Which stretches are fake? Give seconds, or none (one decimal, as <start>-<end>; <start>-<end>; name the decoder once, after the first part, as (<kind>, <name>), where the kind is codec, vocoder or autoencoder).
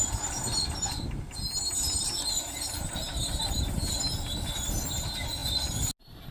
none